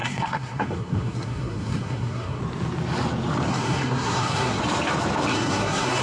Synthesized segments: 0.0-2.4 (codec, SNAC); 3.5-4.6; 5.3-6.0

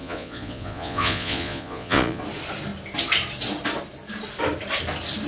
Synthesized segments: 0.0-2.2 (vocoder, Vocos)

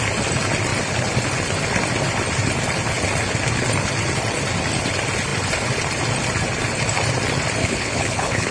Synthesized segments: 7.6-8.5 (codec, HILCodec)

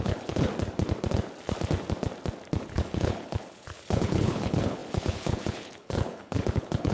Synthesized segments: 0.0-0.5 (codec, HILCodec); 2.6-6.9

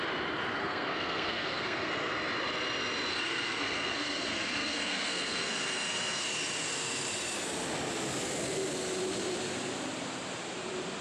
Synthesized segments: 0.6-1.9 (codec, SNAC); 3.1-6.2

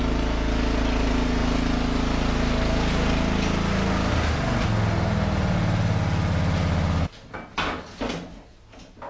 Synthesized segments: none

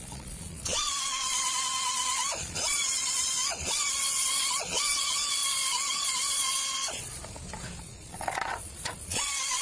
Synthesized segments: 0.0-7.2 (vocoder, Vocos); 7.8-9.6

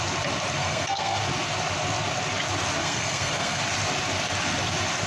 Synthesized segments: 0.6-1.2 (codec, SNAC); 2.8-3.6